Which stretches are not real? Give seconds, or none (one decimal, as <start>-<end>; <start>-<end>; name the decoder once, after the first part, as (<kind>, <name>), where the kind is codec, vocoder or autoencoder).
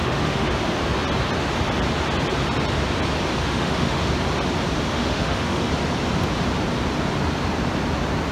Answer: 0.0-0.5 (autoencoder, DAC-VAE); 3.4-4.1; 4.9-5.7